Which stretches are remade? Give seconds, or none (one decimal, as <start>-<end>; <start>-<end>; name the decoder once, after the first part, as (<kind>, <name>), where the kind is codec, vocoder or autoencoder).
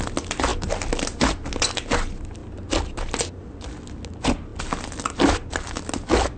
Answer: none